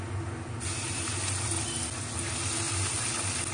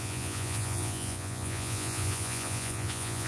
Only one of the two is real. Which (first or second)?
first